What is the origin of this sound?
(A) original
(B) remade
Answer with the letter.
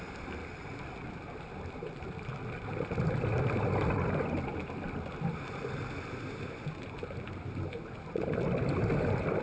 A